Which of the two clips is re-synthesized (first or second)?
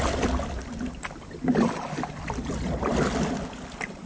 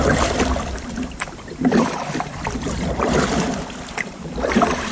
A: second